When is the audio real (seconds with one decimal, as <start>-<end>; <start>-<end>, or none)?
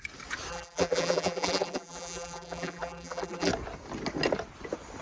0.0-0.5; 3.5-5.0